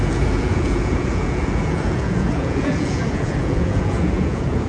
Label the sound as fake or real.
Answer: fake